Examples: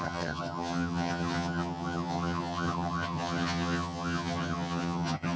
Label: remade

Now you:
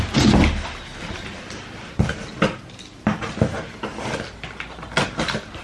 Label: recorded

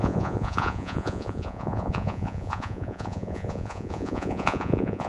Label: remade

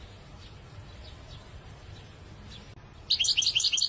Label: recorded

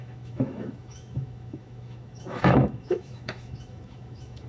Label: remade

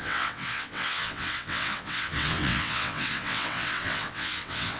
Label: remade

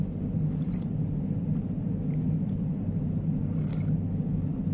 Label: recorded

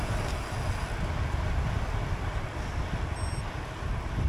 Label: recorded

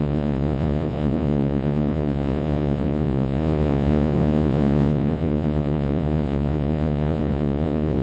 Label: remade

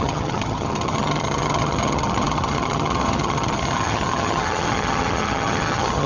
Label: remade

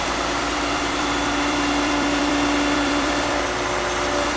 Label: remade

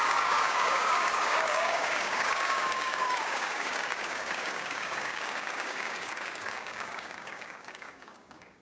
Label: remade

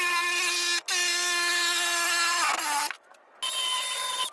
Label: recorded